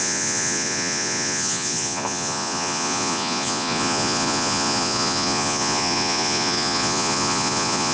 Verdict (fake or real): fake